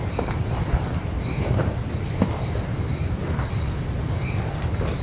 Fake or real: fake